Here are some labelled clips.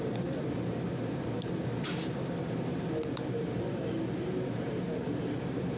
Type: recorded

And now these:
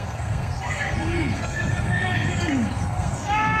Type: remade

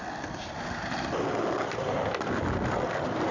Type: recorded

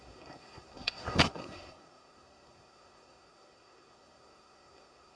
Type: remade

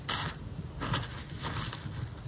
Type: recorded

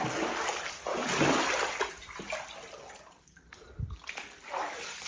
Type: recorded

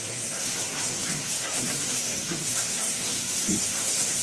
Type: remade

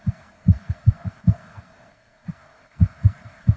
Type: remade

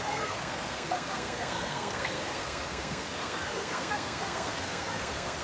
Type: remade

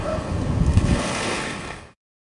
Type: remade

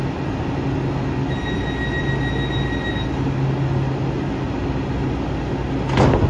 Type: recorded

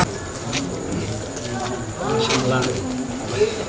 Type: recorded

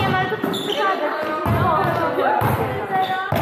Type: recorded